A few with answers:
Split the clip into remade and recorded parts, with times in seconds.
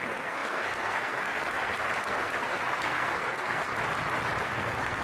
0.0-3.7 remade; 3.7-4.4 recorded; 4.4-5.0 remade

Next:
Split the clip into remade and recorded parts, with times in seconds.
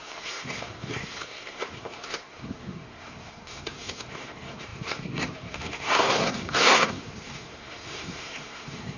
0.0-9.0 remade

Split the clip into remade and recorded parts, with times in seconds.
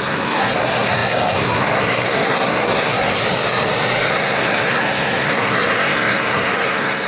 0.0-3.2 remade; 3.2-4.1 recorded; 4.1-7.1 remade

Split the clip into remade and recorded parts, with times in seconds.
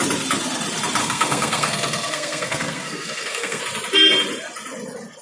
0.0-1.0 recorded; 1.0-3.6 remade; 3.6-5.2 recorded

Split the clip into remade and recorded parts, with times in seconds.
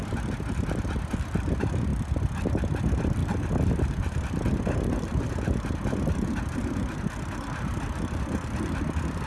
0.0-9.3 recorded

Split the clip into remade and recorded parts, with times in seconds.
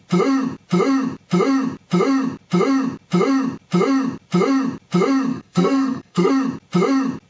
0.0-5.3 recorded; 5.3-6.3 remade; 6.3-7.3 recorded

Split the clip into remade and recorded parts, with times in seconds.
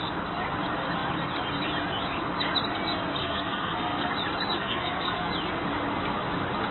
0.0-3.2 recorded; 3.2-4.1 remade; 4.1-4.6 recorded; 4.6-5.3 remade; 5.3-6.7 recorded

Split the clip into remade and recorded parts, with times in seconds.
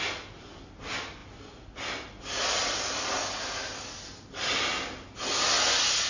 0.0-6.1 recorded